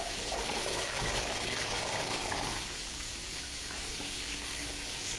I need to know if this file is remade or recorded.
remade